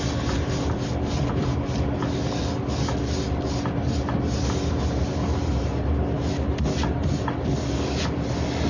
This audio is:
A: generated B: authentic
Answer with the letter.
B